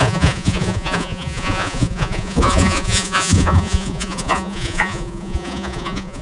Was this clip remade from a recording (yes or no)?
yes